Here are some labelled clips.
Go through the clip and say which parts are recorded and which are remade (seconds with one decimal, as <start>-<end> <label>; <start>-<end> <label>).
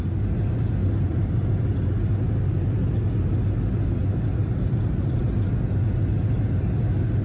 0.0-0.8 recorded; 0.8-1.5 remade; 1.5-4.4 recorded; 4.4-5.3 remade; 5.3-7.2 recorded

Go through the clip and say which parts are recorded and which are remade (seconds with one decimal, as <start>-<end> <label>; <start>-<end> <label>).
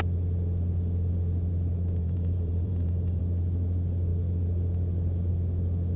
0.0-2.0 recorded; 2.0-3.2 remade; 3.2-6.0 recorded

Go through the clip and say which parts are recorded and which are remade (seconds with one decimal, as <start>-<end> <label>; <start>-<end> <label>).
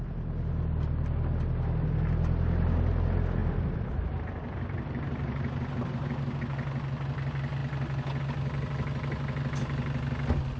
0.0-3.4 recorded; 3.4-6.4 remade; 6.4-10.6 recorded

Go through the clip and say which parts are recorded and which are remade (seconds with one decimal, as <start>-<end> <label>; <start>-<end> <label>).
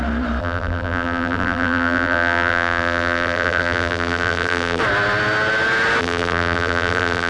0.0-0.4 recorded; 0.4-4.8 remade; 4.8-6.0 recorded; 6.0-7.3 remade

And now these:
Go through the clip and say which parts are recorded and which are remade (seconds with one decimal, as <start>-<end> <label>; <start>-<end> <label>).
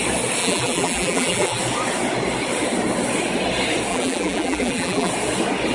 0.0-0.4 recorded; 0.4-1.6 remade; 1.6-3.9 recorded; 3.9-5.1 remade; 5.1-5.7 recorded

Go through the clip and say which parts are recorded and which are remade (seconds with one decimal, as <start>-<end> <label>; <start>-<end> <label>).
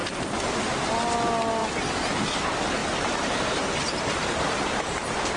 0.0-1.6 recorded; 1.6-2.2 remade; 2.2-2.8 recorded; 2.8-5.4 remade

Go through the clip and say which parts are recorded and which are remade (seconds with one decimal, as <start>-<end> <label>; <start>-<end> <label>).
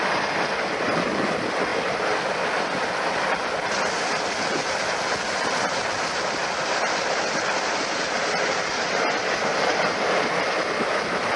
0.0-1.7 remade; 1.7-2.8 recorded; 2.8-11.4 remade